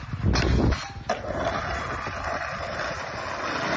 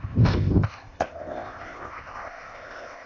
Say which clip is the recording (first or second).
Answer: first